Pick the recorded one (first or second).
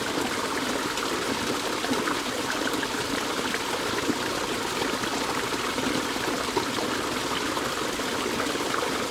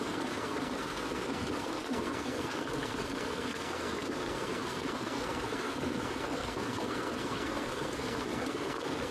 first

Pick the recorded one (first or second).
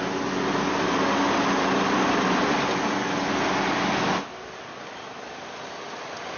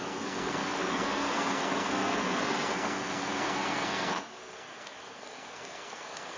first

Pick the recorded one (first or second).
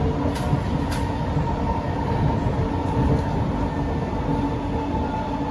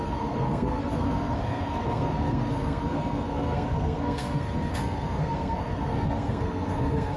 first